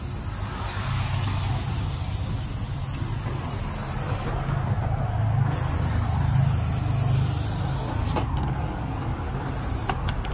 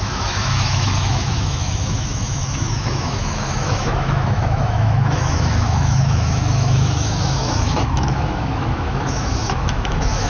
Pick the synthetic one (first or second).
second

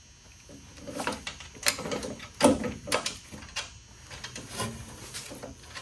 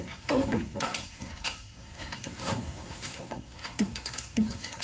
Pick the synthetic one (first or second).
second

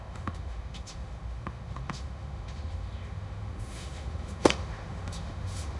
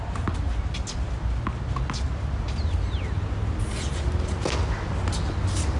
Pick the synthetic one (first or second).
first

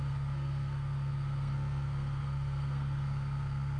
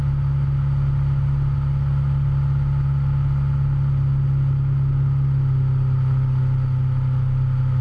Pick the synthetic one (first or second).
first